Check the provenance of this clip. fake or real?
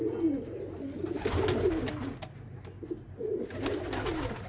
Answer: real